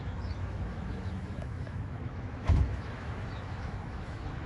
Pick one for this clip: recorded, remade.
remade